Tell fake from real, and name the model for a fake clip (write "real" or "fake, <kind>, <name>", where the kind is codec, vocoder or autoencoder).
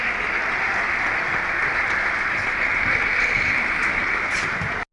real